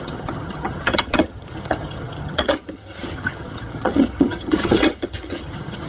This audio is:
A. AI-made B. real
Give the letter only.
A